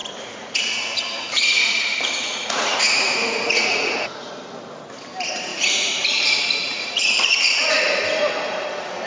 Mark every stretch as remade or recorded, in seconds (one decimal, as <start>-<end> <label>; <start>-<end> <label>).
0.0-4.3 remade; 4.3-5.5 recorded; 5.5-7.7 remade; 7.7-9.1 recorded